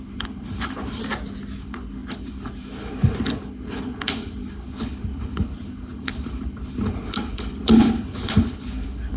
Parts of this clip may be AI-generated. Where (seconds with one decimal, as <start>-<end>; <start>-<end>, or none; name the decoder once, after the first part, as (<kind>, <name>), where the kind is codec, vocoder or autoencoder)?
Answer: 0.0-1.0 (codec, HILCodec); 1.6-9.2